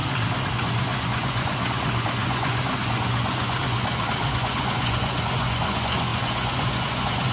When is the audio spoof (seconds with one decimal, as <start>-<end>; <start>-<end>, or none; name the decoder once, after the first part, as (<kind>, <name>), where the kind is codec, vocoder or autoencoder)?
0.5-7.3 (vocoder, Vocos)